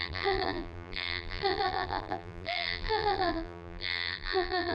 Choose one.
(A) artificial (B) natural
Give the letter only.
A